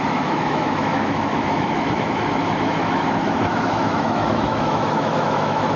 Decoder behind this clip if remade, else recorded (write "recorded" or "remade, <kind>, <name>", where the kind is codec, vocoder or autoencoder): remade, autoencoder, DAC-VAE